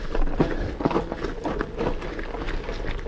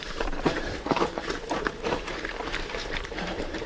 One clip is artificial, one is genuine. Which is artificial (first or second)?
second